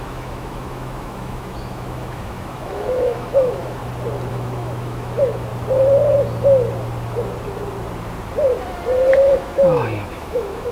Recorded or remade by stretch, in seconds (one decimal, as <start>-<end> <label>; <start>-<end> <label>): 0.0-3.8 remade; 3.8-4.3 recorded; 4.3-5.5 remade; 5.5-9.1 recorded; 9.1-10.7 remade